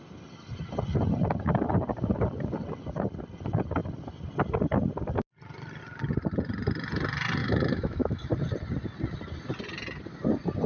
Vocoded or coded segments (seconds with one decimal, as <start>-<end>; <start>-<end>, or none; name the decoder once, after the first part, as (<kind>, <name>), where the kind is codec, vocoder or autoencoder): 7.4-8.3 (autoencoder, DAC-VAE)